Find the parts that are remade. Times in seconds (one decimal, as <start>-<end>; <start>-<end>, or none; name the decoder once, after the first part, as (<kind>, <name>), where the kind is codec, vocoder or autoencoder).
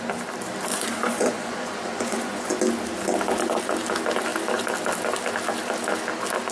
0.7-2.5 (vocoder, Vocos)